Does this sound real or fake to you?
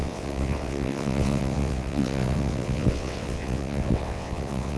fake